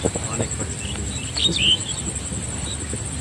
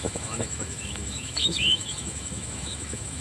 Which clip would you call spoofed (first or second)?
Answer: second